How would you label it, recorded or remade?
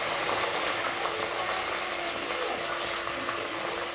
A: recorded